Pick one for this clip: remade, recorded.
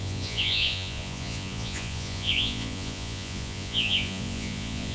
remade